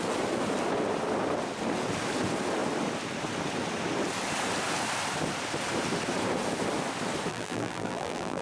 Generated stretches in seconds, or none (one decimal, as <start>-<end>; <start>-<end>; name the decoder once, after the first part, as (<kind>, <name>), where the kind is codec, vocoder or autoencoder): 7.3-8.4 (vocoder, BigVGAN v2)